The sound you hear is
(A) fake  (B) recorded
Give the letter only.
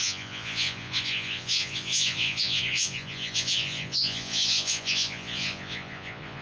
A